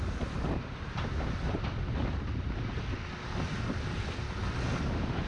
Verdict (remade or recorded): recorded